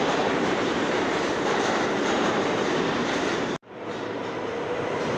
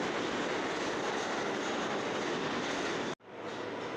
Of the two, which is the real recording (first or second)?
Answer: second